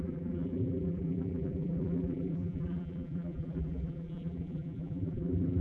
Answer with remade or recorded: remade